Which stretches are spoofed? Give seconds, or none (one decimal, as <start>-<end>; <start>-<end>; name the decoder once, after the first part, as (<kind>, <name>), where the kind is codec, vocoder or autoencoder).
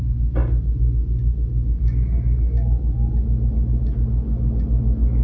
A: none